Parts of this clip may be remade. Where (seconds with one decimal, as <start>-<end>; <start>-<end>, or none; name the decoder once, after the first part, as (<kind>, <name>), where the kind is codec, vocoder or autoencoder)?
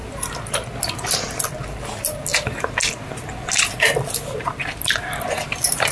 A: 2.3-5.9 (vocoder, BigVGAN v2)